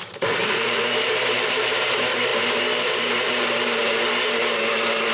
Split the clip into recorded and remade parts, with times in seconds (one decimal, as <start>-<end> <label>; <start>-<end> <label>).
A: 0.0-3.8 remade; 3.8-5.1 recorded